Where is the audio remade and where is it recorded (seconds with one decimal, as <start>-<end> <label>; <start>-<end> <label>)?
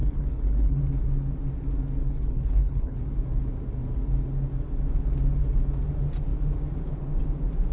0.0-0.8 remade; 0.8-2.0 recorded; 2.0-3.0 remade; 3.0-7.7 recorded